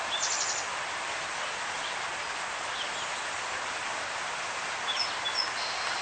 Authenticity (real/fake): real